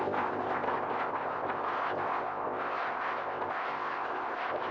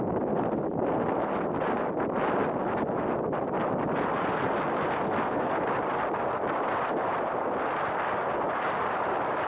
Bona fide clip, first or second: second